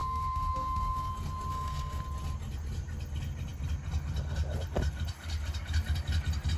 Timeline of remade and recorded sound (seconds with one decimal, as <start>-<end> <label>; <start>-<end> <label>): 0.0-1.1 remade; 1.1-1.5 recorded; 1.5-2.0 remade; 2.0-6.6 recorded